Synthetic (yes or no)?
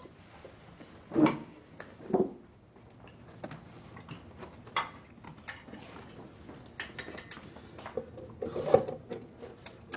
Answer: no